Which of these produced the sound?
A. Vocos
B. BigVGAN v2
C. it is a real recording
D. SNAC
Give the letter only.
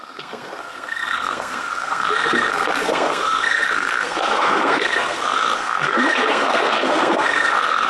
D